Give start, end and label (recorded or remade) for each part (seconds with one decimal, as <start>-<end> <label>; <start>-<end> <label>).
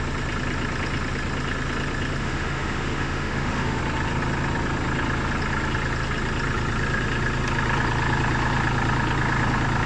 0.0-2.2 recorded; 2.2-3.8 remade; 3.8-9.9 recorded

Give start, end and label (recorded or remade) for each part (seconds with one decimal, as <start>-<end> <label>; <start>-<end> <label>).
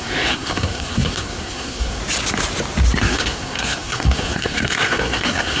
0.0-2.0 remade; 2.0-3.0 recorded; 3.0-5.6 remade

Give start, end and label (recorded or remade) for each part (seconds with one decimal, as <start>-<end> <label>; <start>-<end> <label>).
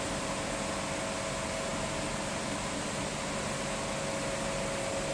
0.0-5.1 recorded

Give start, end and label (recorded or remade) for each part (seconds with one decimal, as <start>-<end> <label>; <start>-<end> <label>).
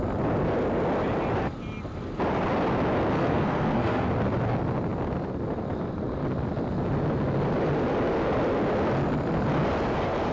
0.0-3.2 recorded; 3.2-4.1 remade; 4.1-10.3 recorded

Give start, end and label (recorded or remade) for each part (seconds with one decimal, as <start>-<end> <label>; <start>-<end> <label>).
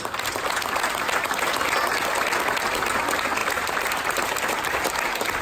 0.0-3.4 recorded; 3.4-4.3 remade; 4.3-5.4 recorded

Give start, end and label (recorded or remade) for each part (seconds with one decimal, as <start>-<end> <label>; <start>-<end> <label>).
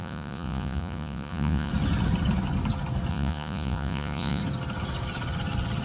0.0-1.7 remade; 1.7-3.1 recorded; 3.1-4.4 remade; 4.4-5.8 recorded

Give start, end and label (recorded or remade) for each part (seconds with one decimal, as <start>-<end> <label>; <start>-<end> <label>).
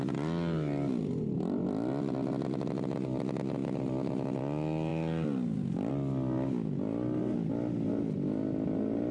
0.0-9.1 recorded